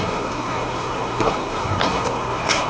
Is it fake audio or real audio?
fake